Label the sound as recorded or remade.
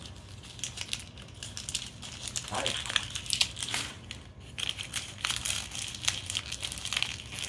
recorded